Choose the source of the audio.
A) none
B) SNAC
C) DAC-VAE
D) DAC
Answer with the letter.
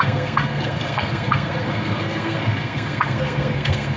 B